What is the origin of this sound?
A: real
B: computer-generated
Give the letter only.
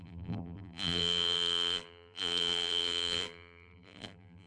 B